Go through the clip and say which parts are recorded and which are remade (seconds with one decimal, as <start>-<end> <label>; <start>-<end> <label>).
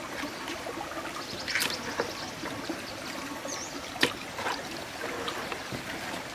0.0-6.3 recorded